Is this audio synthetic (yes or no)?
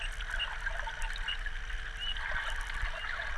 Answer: no